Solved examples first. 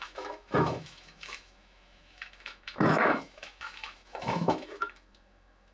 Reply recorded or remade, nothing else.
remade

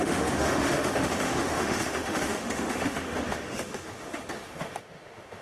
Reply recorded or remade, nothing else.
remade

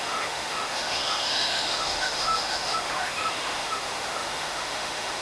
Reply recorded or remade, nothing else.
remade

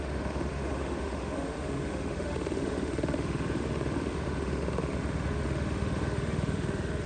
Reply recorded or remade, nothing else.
remade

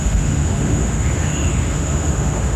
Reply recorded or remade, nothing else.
remade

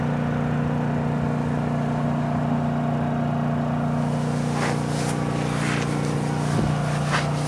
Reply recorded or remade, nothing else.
recorded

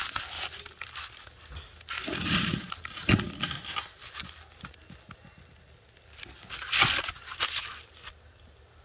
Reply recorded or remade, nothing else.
recorded